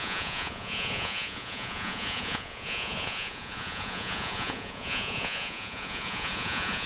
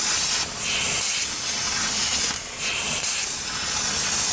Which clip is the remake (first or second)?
first